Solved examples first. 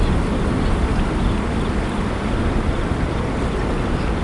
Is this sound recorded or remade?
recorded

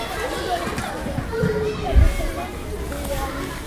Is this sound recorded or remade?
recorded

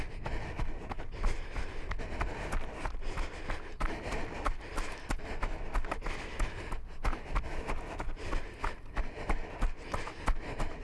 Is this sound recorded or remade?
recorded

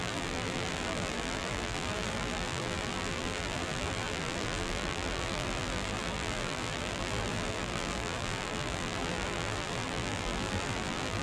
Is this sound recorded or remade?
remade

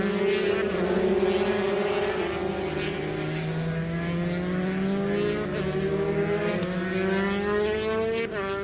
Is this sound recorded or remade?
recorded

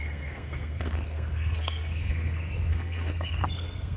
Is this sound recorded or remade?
remade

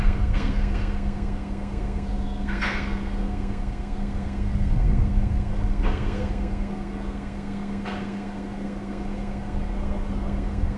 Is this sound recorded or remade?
remade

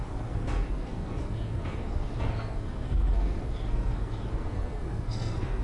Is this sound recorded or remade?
remade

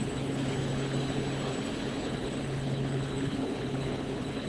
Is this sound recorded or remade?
remade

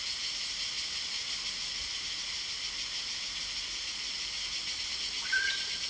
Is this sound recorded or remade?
recorded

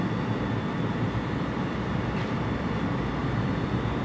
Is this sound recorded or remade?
recorded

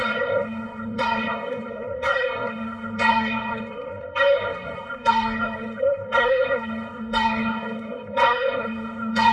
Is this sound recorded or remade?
remade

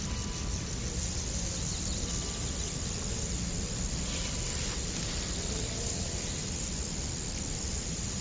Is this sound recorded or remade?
recorded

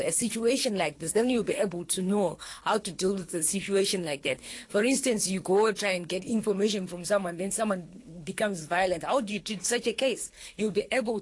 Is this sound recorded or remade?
remade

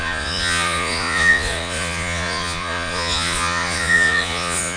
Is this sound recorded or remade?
remade